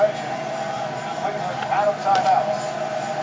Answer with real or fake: real